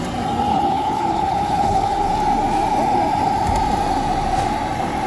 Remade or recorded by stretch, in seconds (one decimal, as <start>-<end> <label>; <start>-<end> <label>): 0.0-0.5 recorded; 0.5-2.1 remade; 2.1-5.1 recorded